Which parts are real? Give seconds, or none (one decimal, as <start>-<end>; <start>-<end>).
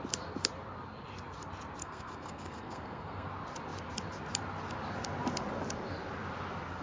0.0-1.8; 3.3-6.8